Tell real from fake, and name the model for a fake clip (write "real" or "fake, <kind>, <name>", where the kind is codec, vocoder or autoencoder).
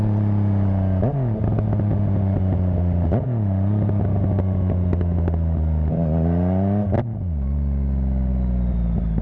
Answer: real